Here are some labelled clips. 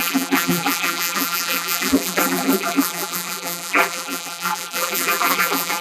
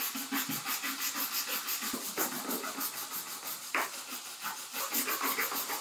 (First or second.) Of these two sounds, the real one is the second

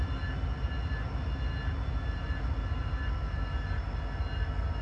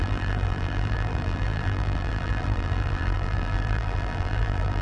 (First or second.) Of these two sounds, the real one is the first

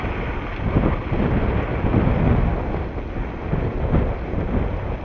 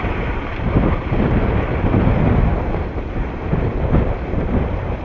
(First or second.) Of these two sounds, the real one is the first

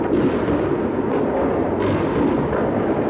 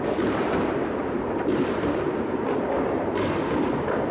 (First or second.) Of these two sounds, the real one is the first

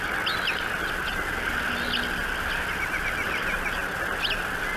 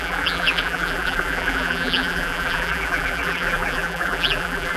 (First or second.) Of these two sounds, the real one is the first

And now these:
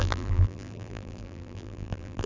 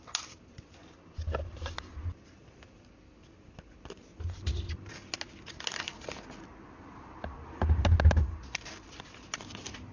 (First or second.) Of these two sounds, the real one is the second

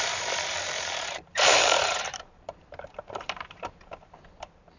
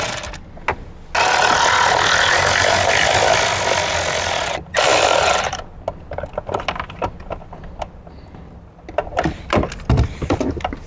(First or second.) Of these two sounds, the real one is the second